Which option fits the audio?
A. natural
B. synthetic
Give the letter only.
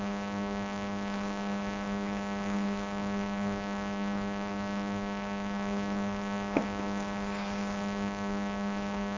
B